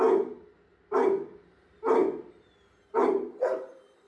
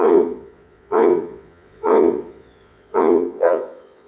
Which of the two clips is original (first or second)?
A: first